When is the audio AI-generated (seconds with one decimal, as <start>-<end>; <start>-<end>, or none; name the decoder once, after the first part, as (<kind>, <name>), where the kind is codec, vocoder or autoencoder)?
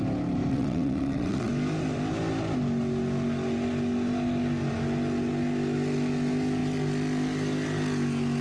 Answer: 0.5-1.5 (vocoder, WaveNeXt)